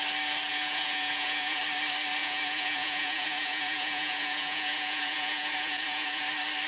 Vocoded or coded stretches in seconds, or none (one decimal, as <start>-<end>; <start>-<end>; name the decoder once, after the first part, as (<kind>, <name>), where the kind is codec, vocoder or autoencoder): 0.5-1.6 (vocoder, Vocos); 2.2-6.2